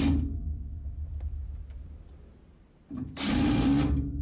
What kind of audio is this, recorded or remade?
recorded